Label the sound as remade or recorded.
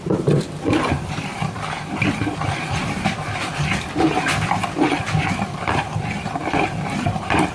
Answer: remade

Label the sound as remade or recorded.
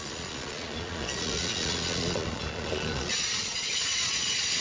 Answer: remade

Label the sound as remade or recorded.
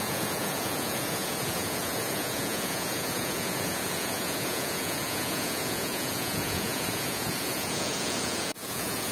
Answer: remade